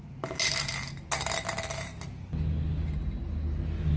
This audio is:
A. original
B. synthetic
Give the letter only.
A